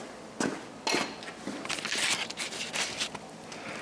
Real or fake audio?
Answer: real